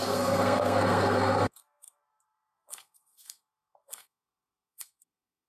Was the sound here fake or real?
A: fake